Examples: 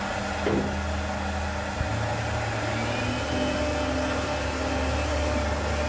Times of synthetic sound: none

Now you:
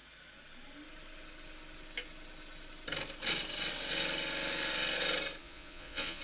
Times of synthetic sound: 5.4-6.2